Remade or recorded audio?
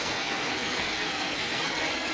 remade